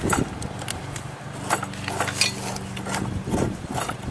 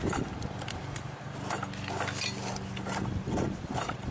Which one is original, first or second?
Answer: first